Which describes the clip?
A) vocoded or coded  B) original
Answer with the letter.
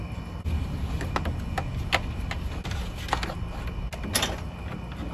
B